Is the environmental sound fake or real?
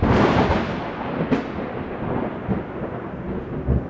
real